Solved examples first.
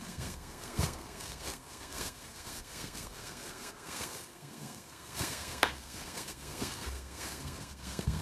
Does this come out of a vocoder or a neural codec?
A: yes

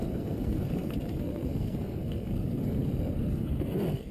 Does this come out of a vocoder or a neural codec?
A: yes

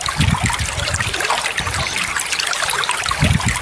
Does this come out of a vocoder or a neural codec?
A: no